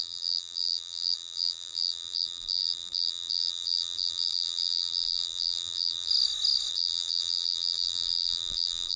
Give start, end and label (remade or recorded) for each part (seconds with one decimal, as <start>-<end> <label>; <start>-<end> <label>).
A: 0.0-6.1 remade; 6.1-6.7 recorded; 6.7-9.0 remade